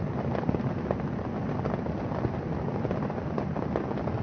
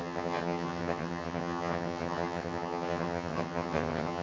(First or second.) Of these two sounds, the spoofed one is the second